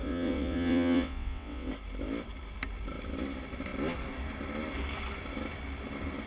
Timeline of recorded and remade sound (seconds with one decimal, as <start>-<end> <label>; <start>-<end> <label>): 0.0-1.7 remade; 1.7-6.3 recorded